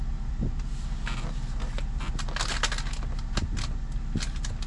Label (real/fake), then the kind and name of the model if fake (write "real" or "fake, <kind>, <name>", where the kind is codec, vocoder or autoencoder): real